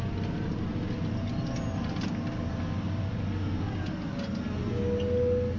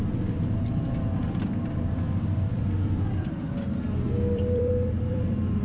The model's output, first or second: second